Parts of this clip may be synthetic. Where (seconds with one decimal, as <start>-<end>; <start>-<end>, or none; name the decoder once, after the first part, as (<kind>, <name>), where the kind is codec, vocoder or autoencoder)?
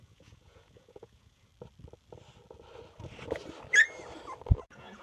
0.0-1.5 (vocoder, Vocos); 4.5-5.0